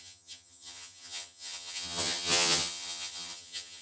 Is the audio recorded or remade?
remade